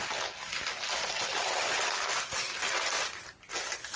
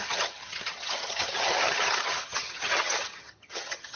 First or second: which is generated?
second